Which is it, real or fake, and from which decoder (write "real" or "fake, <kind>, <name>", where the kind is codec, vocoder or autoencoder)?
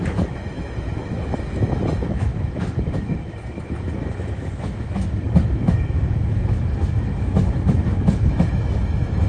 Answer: fake, autoencoder, DAC-VAE